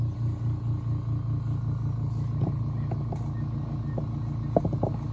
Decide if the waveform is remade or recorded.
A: recorded